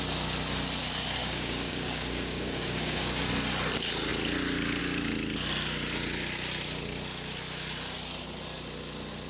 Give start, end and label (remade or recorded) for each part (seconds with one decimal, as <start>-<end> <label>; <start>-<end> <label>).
0.0-1.2 recorded; 1.2-3.3 remade; 3.3-9.3 recorded